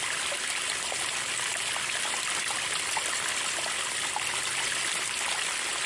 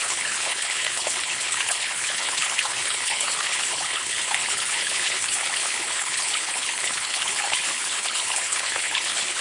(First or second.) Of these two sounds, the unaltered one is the first